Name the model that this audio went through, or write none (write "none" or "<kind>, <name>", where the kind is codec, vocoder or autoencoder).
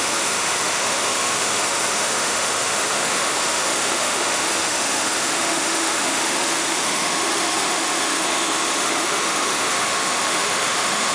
autoencoder, DAC-VAE